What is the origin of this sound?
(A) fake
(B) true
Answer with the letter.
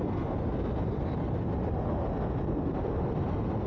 B